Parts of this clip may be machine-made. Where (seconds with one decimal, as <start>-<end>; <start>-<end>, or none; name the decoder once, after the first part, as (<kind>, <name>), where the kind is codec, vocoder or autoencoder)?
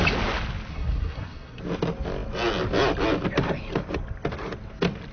0.7-1.6 (codec, SNAC)